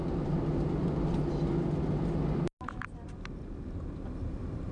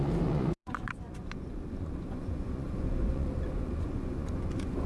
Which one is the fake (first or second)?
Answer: second